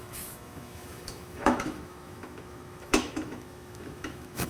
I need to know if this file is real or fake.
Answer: fake